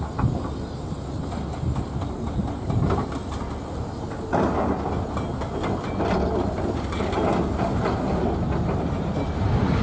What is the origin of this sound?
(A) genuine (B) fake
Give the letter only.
A